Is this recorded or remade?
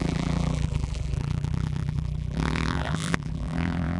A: remade